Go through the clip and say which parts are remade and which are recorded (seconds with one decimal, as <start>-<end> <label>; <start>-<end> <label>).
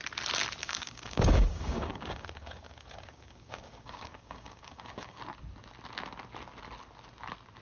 0.0-0.6 recorded; 0.6-5.2 remade; 5.2-7.6 recorded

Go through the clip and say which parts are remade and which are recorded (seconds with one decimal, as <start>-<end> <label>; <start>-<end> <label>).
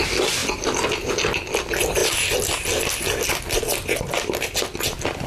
0.0-5.3 recorded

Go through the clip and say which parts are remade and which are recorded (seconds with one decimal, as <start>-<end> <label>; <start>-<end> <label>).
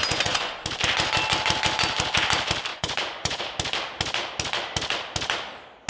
0.0-0.5 remade; 0.5-2.7 recorded; 2.7-3.4 remade; 3.4-5.9 recorded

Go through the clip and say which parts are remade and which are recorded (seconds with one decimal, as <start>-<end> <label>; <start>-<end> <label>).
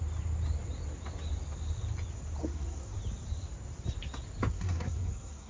0.0-2.4 recorded; 2.4-3.0 remade; 3.0-4.5 recorded; 4.5-5.5 remade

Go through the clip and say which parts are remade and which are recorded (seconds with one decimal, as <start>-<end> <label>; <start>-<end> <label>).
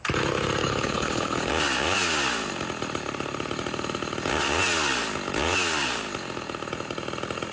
0.0-0.6 recorded; 0.6-1.5 remade; 1.5-7.5 recorded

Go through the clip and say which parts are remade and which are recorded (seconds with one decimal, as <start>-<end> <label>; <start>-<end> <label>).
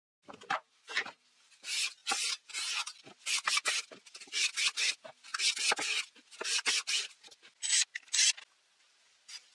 0.0-9.5 recorded